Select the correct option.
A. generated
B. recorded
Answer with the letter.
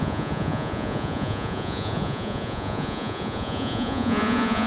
A